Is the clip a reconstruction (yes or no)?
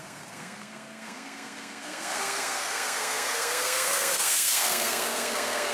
yes